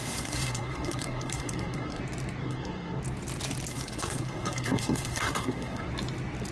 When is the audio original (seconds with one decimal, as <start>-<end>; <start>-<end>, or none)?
2.0-2.4; 3.0-3.7; 5.9-6.5